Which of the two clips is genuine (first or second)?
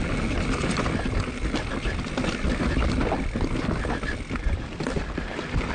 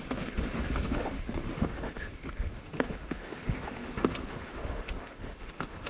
first